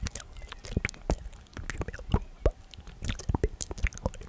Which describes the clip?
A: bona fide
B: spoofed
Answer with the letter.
A